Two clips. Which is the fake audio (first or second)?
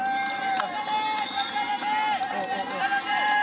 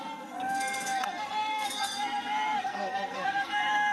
second